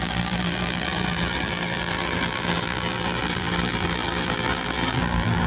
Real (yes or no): no